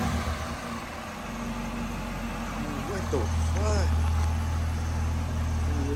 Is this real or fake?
real